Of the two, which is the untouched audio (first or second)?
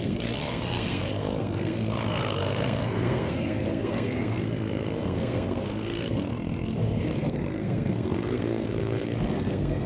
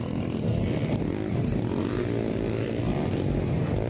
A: second